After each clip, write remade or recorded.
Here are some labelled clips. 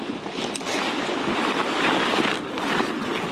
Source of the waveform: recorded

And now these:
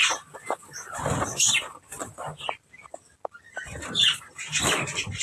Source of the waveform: recorded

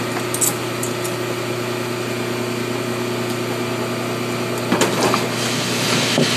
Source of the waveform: recorded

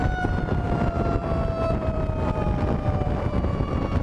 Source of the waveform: remade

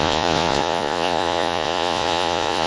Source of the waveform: remade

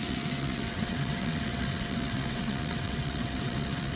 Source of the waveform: remade